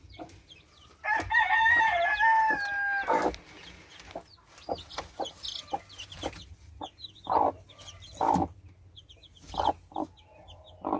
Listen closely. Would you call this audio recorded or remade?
recorded